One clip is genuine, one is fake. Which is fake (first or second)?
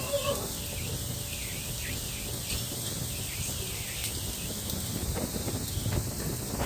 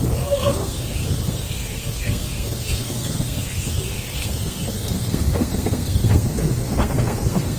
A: second